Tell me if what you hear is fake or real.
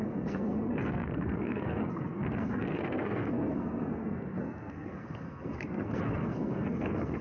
fake